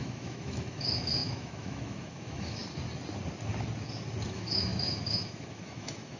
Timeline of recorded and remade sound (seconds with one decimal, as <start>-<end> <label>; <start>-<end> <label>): 0.0-2.6 remade; 2.6-4.3 recorded; 4.3-6.2 remade